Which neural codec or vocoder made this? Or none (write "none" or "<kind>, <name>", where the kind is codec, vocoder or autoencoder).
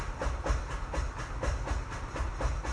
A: none